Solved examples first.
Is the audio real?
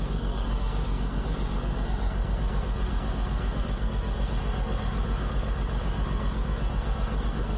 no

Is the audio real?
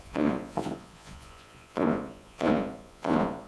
no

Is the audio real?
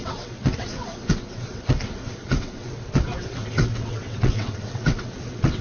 no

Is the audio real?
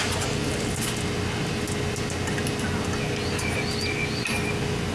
yes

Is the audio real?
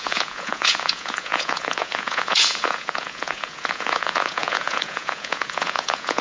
no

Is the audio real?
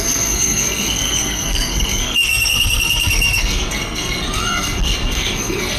no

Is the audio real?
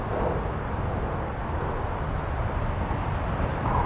yes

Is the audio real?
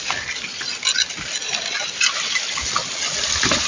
yes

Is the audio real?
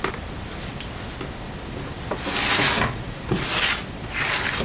yes